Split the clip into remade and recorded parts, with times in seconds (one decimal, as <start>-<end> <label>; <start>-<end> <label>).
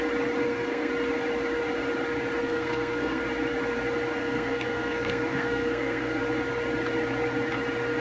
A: 0.0-0.4 recorded; 0.4-0.9 remade; 0.9-2.4 recorded; 2.4-3.2 remade; 3.2-4.2 recorded; 4.2-6.2 remade; 6.2-8.0 recorded